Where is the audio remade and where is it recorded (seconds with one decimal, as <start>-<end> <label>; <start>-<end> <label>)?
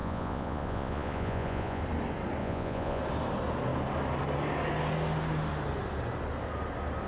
0.0-1.8 remade; 1.8-2.4 recorded; 2.4-3.0 remade; 3.0-7.1 recorded